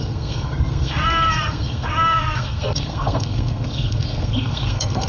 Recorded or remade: remade